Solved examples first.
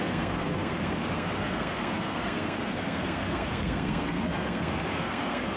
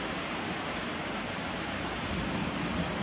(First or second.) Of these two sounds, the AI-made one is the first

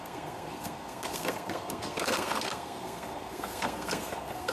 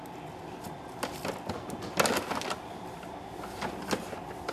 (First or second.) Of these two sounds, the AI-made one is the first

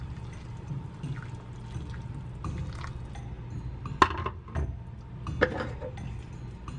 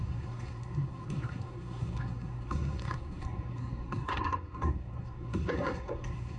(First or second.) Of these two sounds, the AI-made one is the second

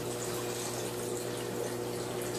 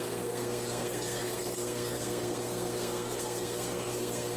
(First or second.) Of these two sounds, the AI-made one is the second